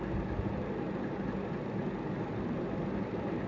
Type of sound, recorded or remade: recorded